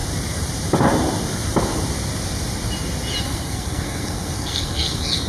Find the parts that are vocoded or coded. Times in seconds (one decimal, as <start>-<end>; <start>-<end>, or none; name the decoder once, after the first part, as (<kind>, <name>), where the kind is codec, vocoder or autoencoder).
3.2-5.3 (codec, SNAC)